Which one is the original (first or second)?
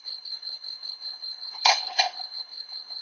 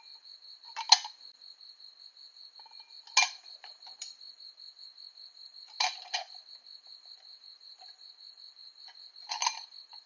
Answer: second